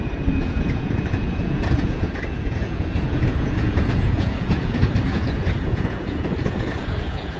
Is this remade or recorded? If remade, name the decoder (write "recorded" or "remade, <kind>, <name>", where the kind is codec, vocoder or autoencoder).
remade, vocoder, Vocos